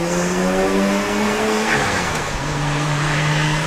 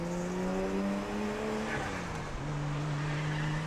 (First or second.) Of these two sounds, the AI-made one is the first